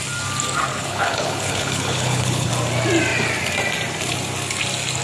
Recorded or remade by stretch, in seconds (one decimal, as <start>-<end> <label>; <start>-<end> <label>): 0.0-0.7 recorded; 0.7-2.5 remade; 2.5-5.0 recorded